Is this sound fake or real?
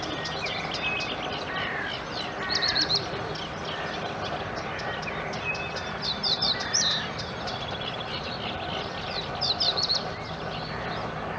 real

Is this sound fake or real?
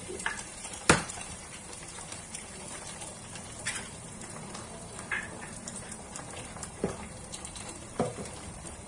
fake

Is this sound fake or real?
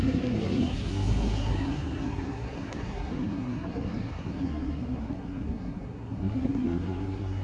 fake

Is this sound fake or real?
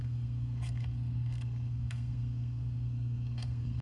fake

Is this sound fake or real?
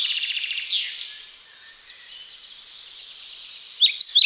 real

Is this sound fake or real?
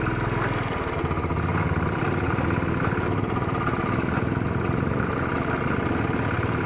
real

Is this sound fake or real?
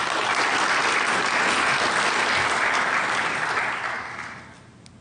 real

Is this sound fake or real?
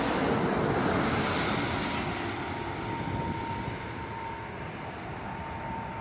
real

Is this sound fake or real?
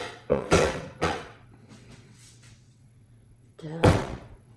fake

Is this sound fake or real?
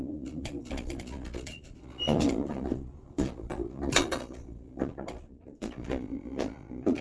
fake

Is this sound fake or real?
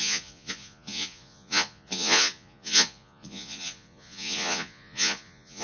fake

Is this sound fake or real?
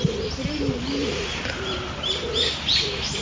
fake